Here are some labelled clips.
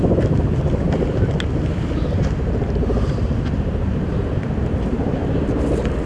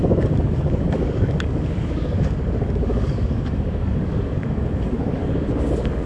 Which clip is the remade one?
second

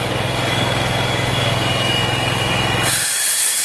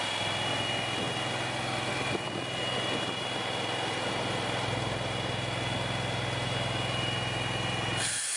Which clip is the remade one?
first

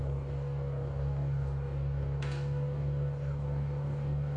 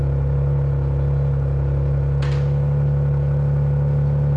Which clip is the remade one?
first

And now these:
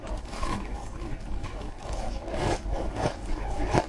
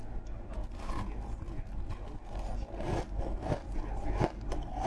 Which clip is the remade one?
first